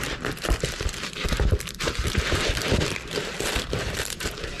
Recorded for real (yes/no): no